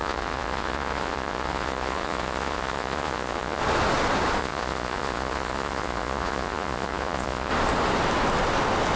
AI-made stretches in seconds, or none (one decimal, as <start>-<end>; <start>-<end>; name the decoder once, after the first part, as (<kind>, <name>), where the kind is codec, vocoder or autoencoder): 0.0-3.6 (vocoder, Vocos); 4.4-7.5

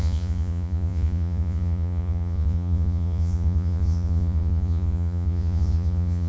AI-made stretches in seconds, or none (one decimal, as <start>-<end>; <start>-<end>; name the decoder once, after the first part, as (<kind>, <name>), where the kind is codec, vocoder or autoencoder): 0.0-6.3 (vocoder, Vocos)

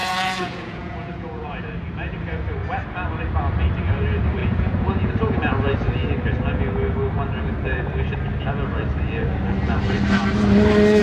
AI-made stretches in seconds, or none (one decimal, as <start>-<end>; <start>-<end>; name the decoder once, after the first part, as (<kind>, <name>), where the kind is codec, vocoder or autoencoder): 0.0-1.6 (vocoder, Vocos); 4.4-5.1

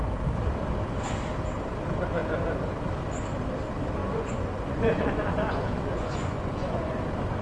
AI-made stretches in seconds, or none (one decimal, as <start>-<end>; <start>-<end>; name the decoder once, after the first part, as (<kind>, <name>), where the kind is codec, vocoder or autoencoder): 4.0-7.0 (vocoder, Vocos)

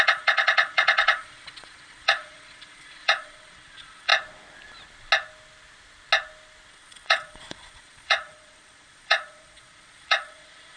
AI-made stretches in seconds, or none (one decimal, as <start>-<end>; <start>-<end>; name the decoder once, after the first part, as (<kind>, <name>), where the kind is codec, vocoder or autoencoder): 0.0-4.1 (vocoder, Vocos); 6.7-10.8

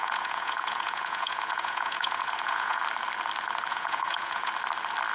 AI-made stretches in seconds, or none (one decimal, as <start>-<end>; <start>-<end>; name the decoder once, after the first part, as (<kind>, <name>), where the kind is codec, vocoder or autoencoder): 0.0-2.8 (vocoder, Vocos); 3.7-4.5

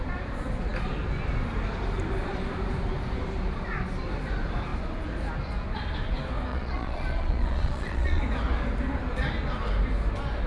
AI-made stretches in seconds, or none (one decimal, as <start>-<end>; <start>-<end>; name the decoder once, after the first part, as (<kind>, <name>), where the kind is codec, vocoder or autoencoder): 6.5-8.2 (vocoder, Vocos)

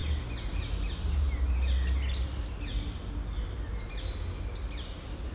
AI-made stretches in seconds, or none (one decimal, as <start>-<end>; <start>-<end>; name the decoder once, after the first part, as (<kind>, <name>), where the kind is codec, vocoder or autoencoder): none